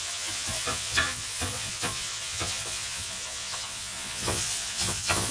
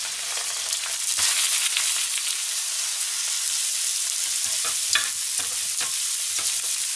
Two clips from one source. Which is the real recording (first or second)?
second